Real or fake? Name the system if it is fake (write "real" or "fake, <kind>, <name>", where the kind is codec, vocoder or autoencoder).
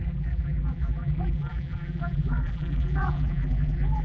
fake, vocoder, BigVGAN v2